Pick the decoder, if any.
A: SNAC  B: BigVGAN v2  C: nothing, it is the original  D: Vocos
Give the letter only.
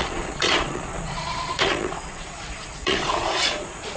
D